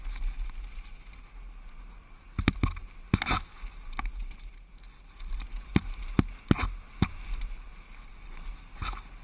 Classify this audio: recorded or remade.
recorded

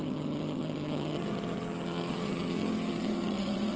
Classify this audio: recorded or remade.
remade